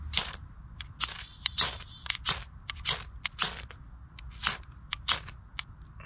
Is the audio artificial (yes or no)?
no